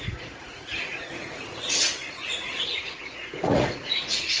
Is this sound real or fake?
fake